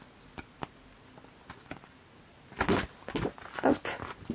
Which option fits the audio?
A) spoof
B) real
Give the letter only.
B